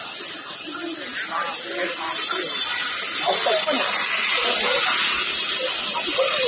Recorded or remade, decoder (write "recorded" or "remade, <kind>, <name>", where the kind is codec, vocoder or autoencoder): recorded